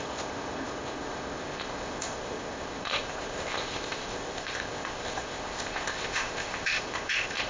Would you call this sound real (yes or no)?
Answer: no